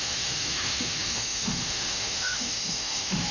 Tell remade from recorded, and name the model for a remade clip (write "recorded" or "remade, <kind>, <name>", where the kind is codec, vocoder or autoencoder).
remade, autoencoder, DAC-VAE